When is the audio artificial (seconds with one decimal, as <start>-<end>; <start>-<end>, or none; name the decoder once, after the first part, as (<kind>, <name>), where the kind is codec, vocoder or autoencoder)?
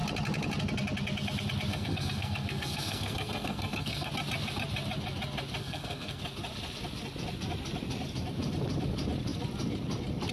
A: 1.7-4.1 (codec, SNAC); 5.6-6.2